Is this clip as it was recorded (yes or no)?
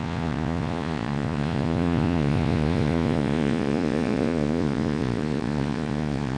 no